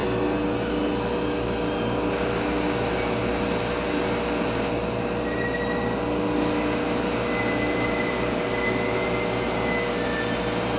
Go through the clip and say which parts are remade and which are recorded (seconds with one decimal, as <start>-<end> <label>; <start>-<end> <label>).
0.0-10.8 recorded